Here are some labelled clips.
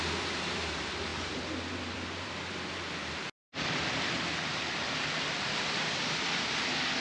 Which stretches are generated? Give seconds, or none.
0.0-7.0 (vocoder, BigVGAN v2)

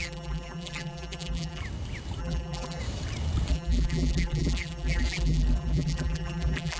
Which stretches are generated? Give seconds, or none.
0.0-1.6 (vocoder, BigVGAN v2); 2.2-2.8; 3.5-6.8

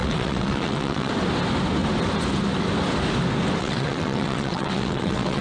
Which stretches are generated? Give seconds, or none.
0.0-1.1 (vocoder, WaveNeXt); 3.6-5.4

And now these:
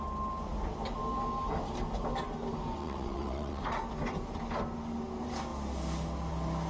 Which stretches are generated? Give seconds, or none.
2.8-3.6 (vocoder, WaveNeXt)

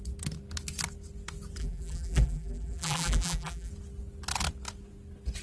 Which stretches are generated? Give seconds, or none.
1.6-3.7 (vocoder, BigVGAN v2)

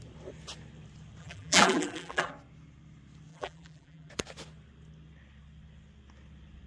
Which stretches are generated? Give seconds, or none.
1.2-2.3 (vocoder, BigVGAN v2); 3.3-4.1